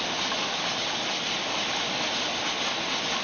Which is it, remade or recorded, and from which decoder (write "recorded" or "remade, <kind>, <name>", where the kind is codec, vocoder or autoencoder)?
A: recorded